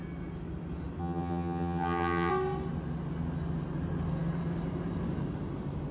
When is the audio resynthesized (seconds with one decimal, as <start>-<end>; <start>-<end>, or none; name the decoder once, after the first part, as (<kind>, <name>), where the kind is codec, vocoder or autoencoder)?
1.0-2.3 (vocoder, HiFi-GAN)